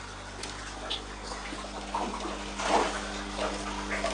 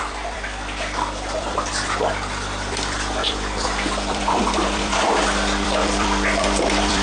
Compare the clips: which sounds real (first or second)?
first